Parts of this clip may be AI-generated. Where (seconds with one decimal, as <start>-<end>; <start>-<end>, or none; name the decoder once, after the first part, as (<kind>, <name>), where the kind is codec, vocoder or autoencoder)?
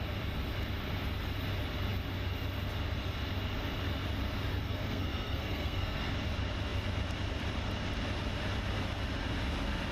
4.5-6.1 (codec, SNAC)